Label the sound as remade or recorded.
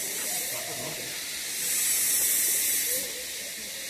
recorded